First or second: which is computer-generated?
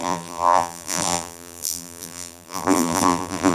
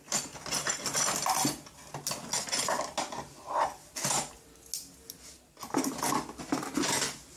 first